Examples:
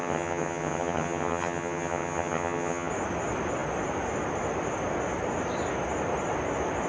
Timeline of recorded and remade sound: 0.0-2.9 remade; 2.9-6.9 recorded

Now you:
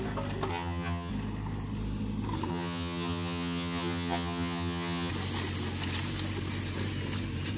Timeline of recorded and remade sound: 0.0-0.5 recorded; 0.5-1.1 remade; 1.1-2.5 recorded; 2.5-5.1 remade; 5.1-7.6 recorded

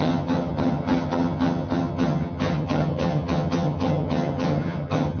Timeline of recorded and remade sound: 0.0-5.2 remade

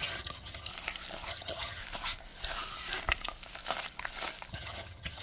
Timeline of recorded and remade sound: 0.0-0.7 remade; 0.7-1.3 recorded; 1.3-1.8 remade; 1.8-4.5 recorded; 4.5-5.2 remade

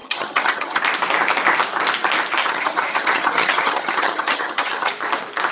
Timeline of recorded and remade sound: 0.0-0.8 remade; 0.8-2.4 recorded; 2.4-4.9 remade; 4.9-5.5 recorded

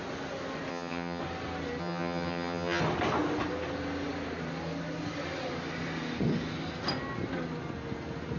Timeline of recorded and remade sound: 0.0-0.7 recorded; 0.7-1.2 remade; 1.2-1.8 recorded; 1.8-2.8 remade; 2.8-8.4 recorded

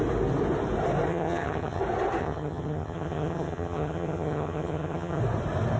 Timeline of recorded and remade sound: 0.0-1.1 recorded; 1.1-1.8 remade; 1.8-2.2 recorded; 2.2-5.2 remade; 5.2-5.8 recorded

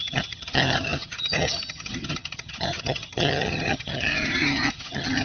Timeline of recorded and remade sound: 0.0-5.2 remade